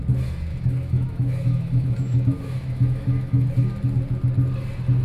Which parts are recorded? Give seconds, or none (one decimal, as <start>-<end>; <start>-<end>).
0.0-0.5; 3.5-5.0